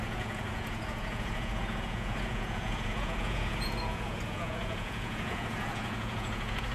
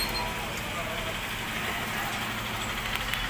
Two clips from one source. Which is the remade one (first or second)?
first